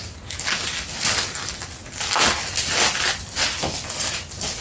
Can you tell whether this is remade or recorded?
recorded